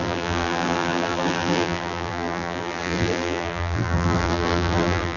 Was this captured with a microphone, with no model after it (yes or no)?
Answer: no